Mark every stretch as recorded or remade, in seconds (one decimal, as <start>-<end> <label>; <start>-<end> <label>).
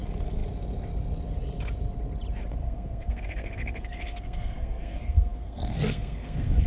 0.0-2.6 recorded; 2.6-6.7 remade